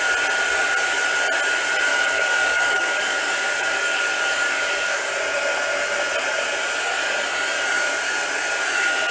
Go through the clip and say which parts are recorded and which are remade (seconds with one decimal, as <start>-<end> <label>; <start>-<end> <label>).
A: 0.0-1.9 recorded; 1.9-5.1 remade; 5.1-9.1 recorded